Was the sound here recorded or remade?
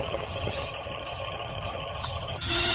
remade